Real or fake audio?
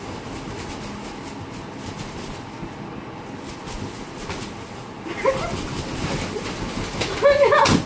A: real